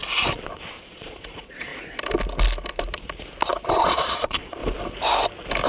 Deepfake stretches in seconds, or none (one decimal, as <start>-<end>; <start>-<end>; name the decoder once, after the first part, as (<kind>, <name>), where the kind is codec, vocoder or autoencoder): 0.8-1.7 (vocoder, Vocos); 3.7-4.6

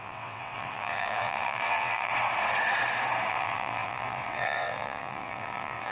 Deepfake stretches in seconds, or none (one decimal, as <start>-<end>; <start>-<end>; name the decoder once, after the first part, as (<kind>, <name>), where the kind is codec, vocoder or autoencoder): 0.0-2.1 (vocoder, WaveNeXt); 3.3-5.9

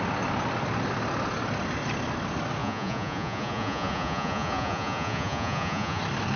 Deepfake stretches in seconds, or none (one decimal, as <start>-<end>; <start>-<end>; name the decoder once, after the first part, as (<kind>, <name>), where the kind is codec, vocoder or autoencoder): 2.6-6.0 (vocoder, Vocos)

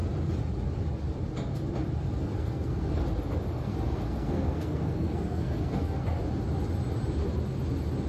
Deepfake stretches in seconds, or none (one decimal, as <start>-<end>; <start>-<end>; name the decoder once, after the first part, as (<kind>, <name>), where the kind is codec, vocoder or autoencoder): 2.2-3.0 (codec, SNAC); 3.5-6.2

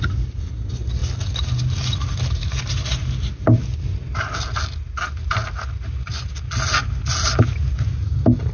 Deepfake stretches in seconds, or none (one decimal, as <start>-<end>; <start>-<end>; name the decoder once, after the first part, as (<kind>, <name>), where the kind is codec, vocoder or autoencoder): none

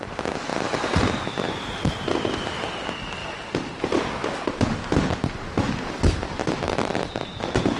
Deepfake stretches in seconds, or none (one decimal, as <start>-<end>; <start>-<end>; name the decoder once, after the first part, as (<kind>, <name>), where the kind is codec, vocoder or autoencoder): 3.2-3.8 (vocoder, BigVGAN v2); 6.4-7.2

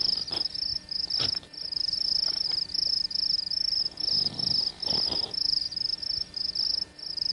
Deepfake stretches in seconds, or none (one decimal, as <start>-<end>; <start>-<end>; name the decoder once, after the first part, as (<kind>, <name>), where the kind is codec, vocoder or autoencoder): none

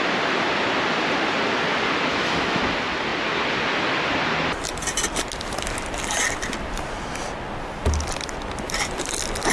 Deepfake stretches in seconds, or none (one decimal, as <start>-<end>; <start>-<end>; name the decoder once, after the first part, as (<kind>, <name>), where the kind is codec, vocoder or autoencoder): 2.1-2.6 (autoencoder, DAC-VAE)